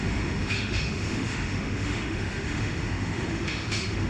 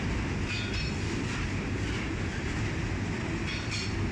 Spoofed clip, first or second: first